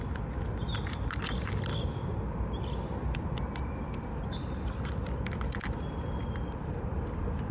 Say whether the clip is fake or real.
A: real